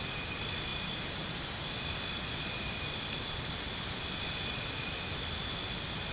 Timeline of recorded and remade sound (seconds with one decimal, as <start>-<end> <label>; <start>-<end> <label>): 0.0-6.1 recorded